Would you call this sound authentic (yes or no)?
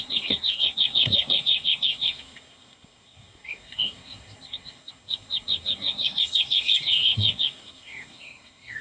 no